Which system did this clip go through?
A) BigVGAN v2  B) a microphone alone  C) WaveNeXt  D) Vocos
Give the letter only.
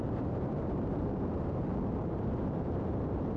A